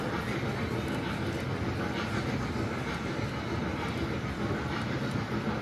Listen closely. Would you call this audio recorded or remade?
recorded